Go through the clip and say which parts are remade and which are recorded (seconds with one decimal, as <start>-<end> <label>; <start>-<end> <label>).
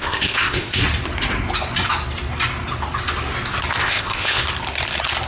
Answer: 0.0-0.8 remade; 0.8-3.8 recorded; 3.8-4.4 remade; 4.4-5.3 recorded